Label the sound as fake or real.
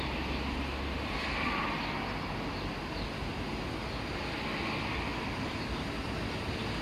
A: real